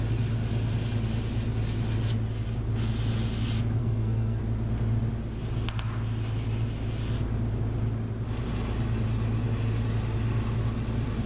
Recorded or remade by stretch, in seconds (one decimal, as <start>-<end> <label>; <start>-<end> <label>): 0.0-3.8 recorded; 3.8-4.4 remade; 4.4-11.3 recorded